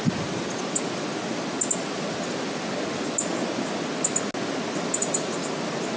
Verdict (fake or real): real